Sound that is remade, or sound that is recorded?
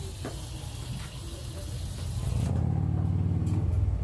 recorded